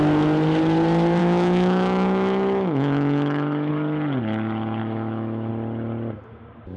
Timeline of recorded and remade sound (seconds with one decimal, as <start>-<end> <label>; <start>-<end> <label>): 0.0-1.2 recorded; 1.2-3.7 remade; 3.7-4.8 recorded; 4.8-5.5 remade; 5.5-6.8 recorded